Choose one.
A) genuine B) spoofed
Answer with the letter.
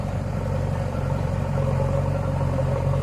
B